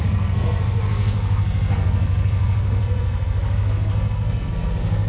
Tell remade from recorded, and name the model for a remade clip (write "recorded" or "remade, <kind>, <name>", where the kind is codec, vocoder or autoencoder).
remade, codec, SNAC